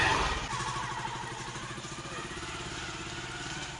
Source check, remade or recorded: recorded